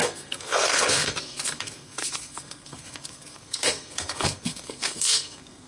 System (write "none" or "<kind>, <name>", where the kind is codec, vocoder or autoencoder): codec, SNAC